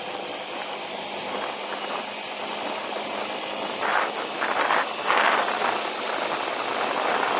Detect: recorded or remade recorded